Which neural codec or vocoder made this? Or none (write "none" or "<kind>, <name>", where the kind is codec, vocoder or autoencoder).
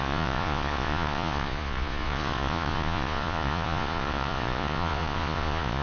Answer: vocoder, Vocos